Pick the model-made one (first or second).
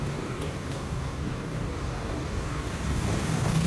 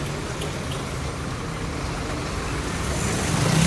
first